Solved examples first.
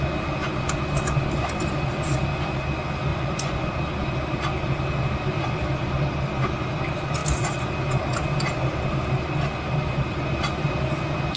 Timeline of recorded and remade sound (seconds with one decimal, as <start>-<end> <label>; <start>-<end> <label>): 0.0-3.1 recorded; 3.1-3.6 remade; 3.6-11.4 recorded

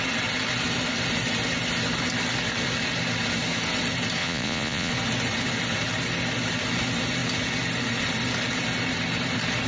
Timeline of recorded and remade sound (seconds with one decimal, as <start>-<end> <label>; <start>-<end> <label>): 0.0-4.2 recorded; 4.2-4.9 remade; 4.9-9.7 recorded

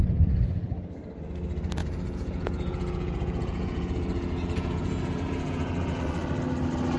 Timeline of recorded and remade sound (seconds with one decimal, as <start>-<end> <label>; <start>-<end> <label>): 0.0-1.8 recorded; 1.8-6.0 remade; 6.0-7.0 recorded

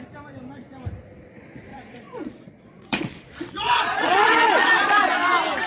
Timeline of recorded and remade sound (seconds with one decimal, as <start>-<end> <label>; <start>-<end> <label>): 0.0-1.7 recorded; 1.7-5.1 remade; 5.1-5.7 recorded

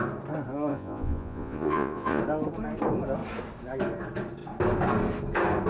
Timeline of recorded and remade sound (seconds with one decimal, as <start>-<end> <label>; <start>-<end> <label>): 0.0-0.7 recorded; 0.7-2.2 remade; 2.2-5.7 recorded

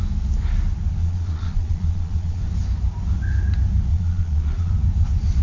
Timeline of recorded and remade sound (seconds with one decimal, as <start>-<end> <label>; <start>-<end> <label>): 0.0-1.0 recorded; 1.0-2.4 remade; 2.4-3.9 recorded; 3.9-4.7 remade; 4.7-5.4 recorded

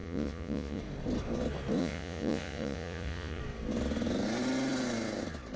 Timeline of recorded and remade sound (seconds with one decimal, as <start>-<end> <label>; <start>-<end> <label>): 0.0-0.8 remade; 0.8-1.8 recorded; 1.8-3.4 remade; 3.4-5.6 recorded